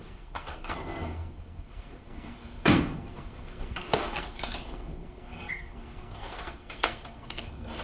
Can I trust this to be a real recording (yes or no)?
no